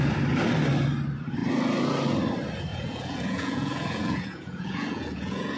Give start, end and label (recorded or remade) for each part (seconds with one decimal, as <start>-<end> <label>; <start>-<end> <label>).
0.0-2.7 recorded; 2.7-5.6 remade